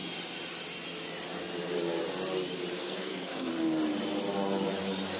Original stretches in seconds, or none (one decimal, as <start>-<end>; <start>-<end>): 0.0-2.8; 3.5-5.2